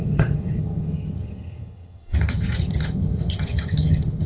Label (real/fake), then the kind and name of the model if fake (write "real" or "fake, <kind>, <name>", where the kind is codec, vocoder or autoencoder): fake, vocoder, HiFi-GAN